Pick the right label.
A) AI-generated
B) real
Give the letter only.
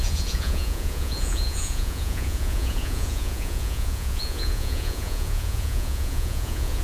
A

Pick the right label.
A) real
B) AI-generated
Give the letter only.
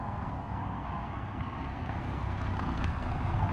B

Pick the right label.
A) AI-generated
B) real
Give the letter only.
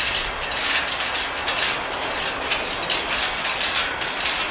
B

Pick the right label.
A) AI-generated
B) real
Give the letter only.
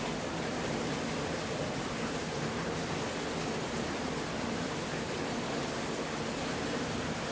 B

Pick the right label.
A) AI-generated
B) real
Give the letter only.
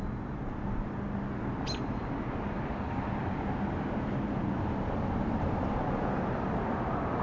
B